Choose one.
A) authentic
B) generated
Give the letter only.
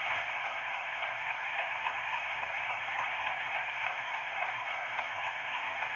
B